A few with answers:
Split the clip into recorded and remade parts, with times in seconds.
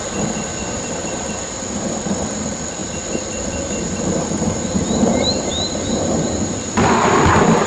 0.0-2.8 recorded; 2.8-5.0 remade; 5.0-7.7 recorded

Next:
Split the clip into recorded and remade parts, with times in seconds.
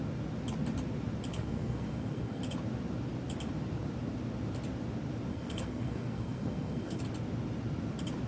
0.0-1.3 recorded; 1.3-2.4 remade; 2.4-5.3 recorded; 5.3-7.0 remade; 7.0-8.3 recorded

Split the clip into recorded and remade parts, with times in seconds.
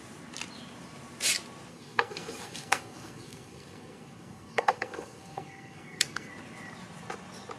0.0-1.7 recorded; 1.7-6.3 remade; 6.3-7.6 recorded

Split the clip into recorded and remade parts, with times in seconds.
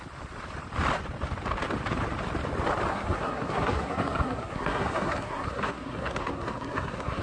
0.0-2.9 recorded; 2.9-7.2 remade